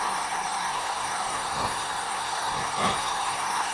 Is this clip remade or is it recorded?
remade